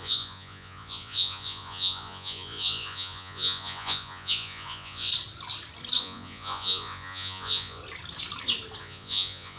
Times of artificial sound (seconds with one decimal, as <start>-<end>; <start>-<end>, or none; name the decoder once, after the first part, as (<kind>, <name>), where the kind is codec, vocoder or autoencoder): 0.0-5.1 (vocoder, Vocos); 6.0-7.8; 8.8-9.6